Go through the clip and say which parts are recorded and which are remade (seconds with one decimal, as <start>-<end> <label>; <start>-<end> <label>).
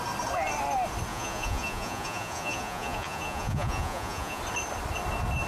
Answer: 0.0-1.1 recorded; 1.1-4.4 remade; 4.4-5.5 recorded